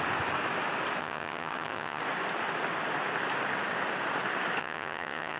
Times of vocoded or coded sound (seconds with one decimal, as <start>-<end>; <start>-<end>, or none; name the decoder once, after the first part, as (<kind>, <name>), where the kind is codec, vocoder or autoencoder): 1.0-2.0 (vocoder, HiFi-GAN); 4.6-5.4